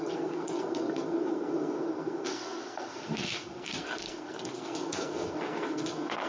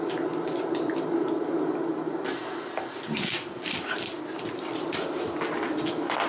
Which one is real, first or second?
second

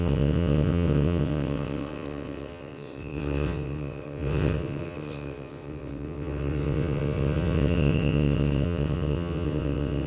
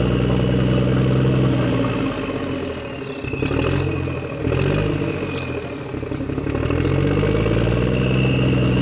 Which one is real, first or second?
second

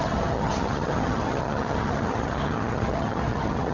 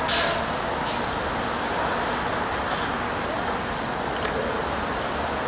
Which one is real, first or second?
second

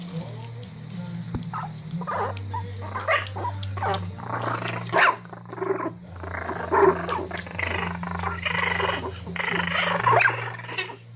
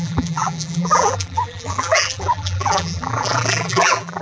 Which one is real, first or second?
first